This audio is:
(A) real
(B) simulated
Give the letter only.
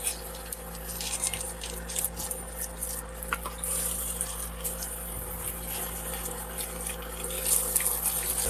A